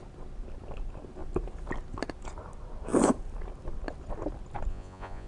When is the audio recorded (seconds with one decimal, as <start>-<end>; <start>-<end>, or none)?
0.0-4.7